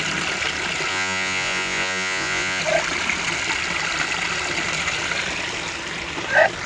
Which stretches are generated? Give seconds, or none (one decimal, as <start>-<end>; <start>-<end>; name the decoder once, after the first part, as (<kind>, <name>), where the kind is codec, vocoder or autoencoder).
0.9-2.6 (vocoder, Vocos)